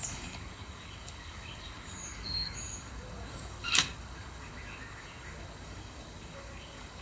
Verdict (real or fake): fake